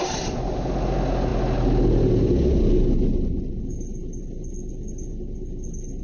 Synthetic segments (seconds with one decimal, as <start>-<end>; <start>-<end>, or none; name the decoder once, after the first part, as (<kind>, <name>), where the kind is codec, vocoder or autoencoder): none